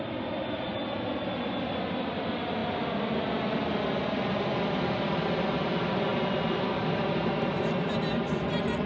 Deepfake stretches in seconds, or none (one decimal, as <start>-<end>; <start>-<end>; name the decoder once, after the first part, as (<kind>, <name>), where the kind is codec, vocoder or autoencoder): none